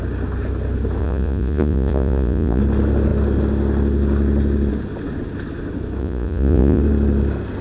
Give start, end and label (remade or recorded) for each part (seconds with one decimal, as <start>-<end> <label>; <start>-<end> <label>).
0.0-1.0 recorded; 1.0-2.6 remade; 2.6-6.0 recorded; 6.0-6.8 remade; 6.8-7.6 recorded